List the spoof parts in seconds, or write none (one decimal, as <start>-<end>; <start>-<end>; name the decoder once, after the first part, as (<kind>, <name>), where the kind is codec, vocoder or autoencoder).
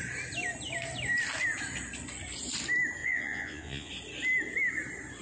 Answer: 3.0-3.9 (vocoder, Vocos)